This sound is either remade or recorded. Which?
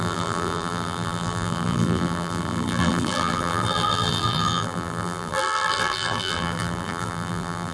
remade